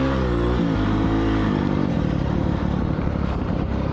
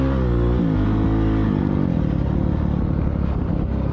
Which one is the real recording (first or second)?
second